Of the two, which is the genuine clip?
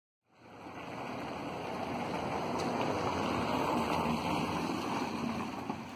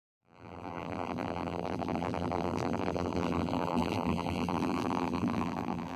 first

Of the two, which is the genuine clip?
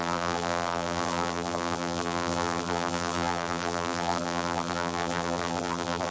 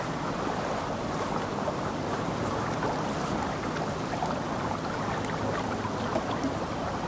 second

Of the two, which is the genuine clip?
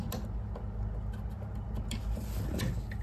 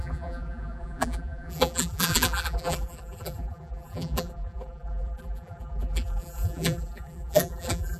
first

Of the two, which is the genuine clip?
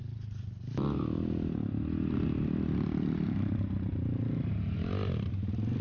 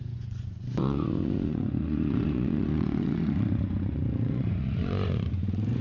first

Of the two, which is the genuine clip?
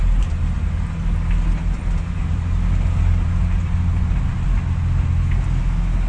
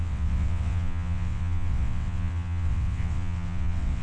first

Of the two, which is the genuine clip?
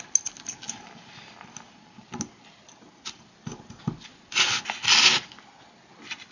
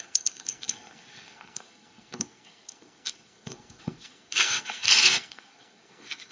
first